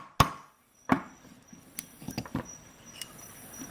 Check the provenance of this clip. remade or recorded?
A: recorded